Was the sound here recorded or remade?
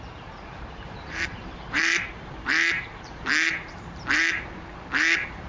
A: remade